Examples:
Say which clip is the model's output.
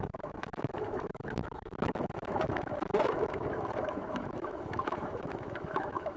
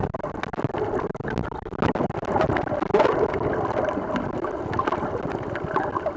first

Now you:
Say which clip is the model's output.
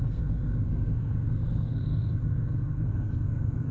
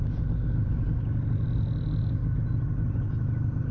first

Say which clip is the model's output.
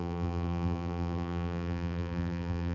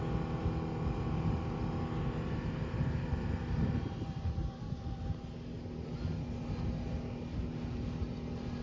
first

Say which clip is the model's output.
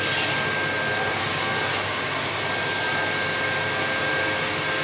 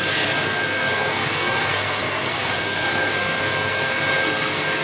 second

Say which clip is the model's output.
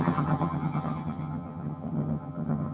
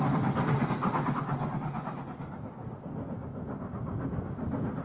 first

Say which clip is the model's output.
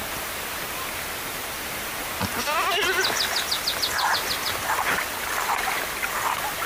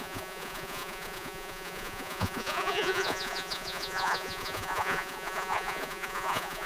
second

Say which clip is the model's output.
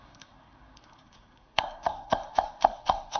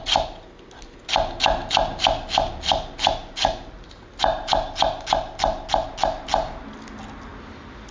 first